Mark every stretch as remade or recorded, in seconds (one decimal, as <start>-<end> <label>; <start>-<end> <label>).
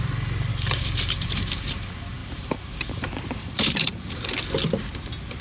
0.0-0.5 recorded; 0.5-1.7 remade; 1.7-2.2 recorded; 2.2-4.3 remade; 4.3-5.4 recorded